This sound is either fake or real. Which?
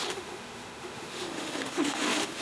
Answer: fake